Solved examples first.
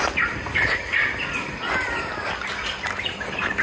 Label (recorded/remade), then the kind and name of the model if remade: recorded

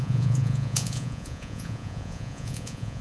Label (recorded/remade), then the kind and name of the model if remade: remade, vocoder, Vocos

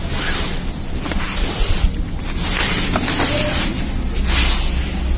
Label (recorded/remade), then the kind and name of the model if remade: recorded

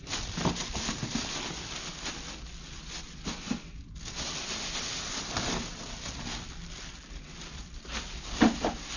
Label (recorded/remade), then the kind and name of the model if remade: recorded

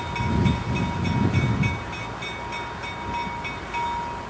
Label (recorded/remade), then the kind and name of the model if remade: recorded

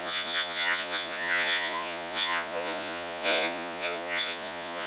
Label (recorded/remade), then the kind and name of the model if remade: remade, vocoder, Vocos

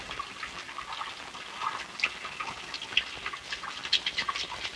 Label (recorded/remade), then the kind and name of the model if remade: recorded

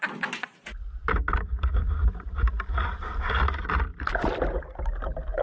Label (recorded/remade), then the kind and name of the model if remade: recorded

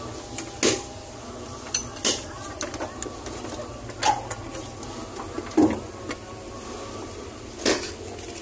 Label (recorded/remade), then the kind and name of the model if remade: recorded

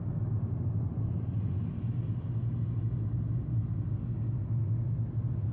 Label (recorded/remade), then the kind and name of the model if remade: recorded